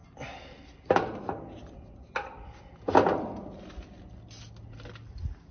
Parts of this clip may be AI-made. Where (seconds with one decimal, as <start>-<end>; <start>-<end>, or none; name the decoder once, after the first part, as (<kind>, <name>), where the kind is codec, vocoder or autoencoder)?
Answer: none